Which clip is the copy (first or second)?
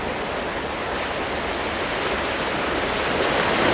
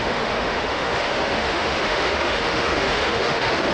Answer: second